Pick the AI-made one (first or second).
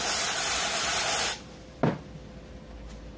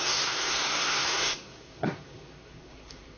second